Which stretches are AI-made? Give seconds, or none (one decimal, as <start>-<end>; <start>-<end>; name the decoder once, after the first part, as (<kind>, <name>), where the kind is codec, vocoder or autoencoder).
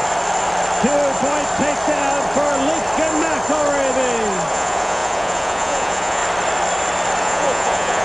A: 4.5-6.2 (vocoder, Vocos); 7.2-8.0